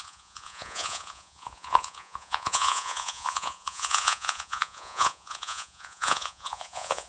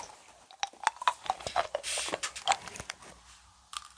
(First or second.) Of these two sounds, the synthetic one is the first